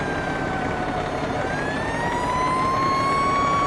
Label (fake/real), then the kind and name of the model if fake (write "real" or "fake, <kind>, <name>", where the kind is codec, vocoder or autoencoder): fake, vocoder, BigVGAN v2